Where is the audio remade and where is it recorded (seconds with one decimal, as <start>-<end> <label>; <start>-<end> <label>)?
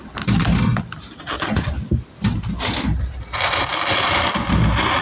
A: 0.0-5.0 recorded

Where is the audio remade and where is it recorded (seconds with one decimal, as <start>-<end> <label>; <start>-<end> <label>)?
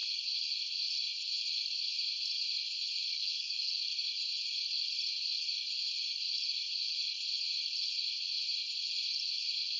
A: 0.0-3.1 recorded; 3.1-3.7 remade; 3.7-9.8 recorded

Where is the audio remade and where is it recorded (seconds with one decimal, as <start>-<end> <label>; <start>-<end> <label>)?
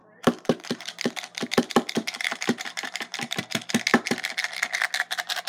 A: 0.0-1.0 remade; 1.0-2.0 recorded; 2.0-3.4 remade; 3.4-5.5 recorded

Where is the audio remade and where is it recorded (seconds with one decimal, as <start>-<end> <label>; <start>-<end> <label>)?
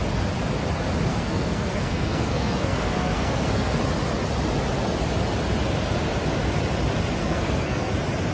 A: 0.0-1.1 recorded; 1.1-3.8 remade; 3.8-7.2 recorded; 7.2-7.9 remade; 7.9-8.3 recorded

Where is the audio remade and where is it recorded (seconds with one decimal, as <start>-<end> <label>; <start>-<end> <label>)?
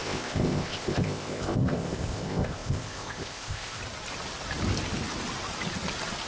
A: 0.0-3.8 remade; 3.8-6.3 recorded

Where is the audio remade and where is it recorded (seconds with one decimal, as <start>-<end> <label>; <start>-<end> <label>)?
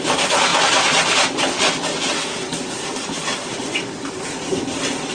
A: 0.0-5.1 remade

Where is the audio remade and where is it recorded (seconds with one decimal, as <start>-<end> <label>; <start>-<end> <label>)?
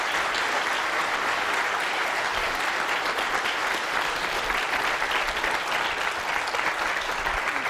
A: 0.0-2.0 recorded; 2.0-5.4 remade; 5.4-7.7 recorded